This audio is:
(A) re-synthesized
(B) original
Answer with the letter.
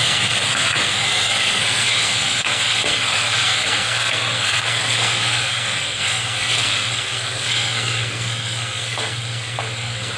A